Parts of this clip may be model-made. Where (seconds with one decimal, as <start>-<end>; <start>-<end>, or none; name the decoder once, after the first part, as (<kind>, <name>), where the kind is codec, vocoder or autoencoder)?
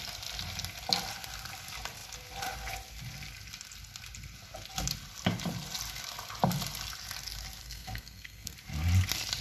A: 7.6-8.5 (codec, SNAC)